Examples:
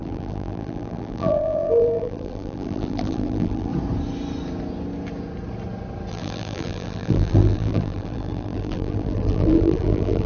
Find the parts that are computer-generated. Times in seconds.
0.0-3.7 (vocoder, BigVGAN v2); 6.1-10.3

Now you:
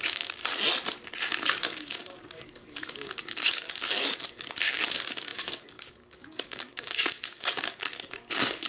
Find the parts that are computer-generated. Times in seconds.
0.0-0.4 (codec, DAC); 1.2-8.7

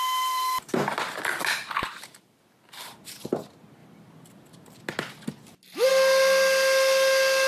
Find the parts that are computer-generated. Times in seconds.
none

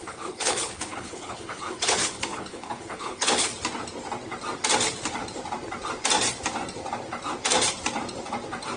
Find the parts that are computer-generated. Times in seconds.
0.0-3.5 (codec, HILCodec)

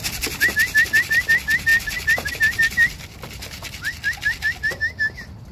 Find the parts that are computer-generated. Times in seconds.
none

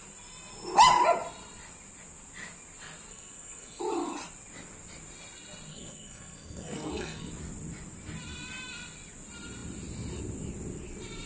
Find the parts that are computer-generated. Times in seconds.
3.1-3.8 (codec, SNAC); 5.7-7.3